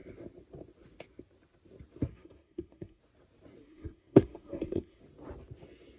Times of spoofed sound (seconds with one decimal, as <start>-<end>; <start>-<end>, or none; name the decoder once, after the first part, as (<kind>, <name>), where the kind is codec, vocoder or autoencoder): 2.1-3.0 (codec, SNAC); 3.6-5.0